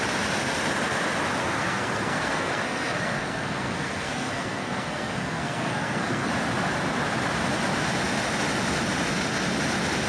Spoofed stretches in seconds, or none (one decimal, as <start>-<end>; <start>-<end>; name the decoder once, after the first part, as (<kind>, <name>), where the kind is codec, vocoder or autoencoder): 1.4-6.3 (codec, SNAC)